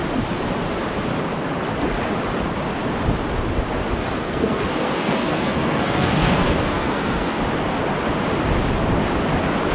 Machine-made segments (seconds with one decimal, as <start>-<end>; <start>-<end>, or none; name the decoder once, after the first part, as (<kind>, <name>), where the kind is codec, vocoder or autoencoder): 4.2-7.4 (codec, SNAC)